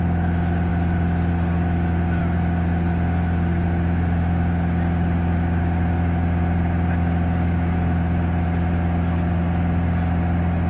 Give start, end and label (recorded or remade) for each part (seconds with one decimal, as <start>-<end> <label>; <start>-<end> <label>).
0.0-10.7 recorded